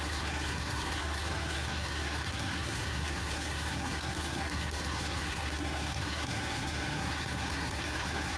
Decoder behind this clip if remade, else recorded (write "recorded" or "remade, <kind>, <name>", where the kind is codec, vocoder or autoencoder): remade, codec, SNAC